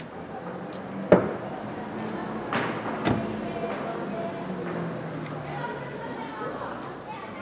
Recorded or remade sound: recorded